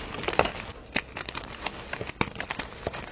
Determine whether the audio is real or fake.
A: real